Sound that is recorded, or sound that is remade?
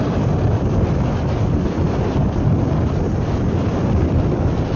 recorded